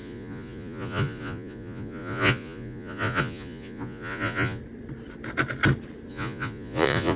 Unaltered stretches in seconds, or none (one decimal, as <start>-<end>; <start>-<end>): 4.6-6.1